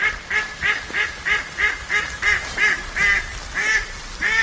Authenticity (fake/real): real